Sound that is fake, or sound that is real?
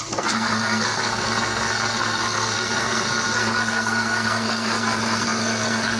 fake